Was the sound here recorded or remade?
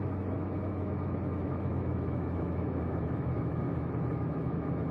remade